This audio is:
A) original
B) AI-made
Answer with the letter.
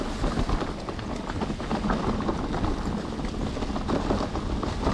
A